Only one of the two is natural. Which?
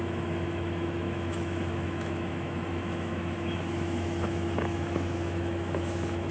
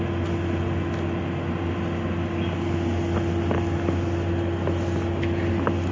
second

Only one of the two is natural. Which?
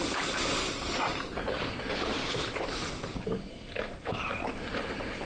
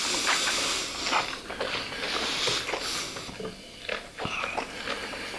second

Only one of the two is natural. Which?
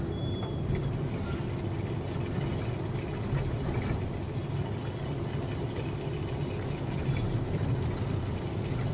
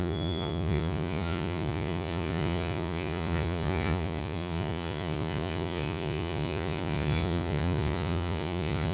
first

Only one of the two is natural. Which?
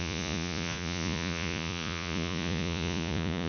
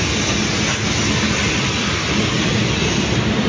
second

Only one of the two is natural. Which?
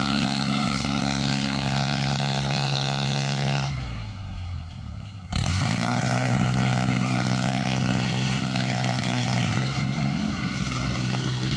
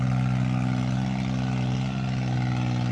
second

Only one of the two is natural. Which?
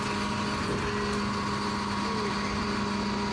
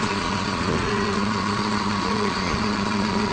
first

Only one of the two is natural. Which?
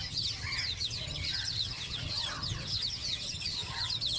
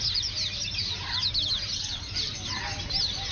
second